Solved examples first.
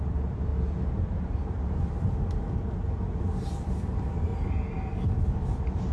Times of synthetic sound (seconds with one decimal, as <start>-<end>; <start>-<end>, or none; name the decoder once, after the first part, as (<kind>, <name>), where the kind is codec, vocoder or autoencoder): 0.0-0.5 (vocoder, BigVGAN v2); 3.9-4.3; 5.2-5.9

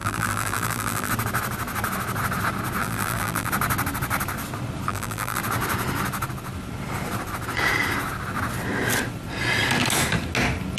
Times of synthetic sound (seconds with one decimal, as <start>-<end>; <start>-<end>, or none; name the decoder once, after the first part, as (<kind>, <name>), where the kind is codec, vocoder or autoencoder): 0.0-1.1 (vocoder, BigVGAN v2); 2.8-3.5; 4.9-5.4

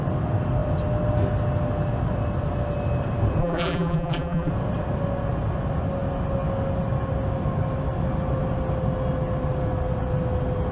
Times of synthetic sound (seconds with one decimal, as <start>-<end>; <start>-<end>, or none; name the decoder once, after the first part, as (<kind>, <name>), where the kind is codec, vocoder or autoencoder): 3.4-4.5 (vocoder, BigVGAN v2)